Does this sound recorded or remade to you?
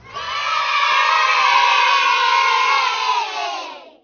remade